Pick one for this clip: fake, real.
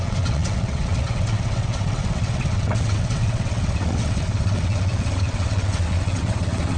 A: fake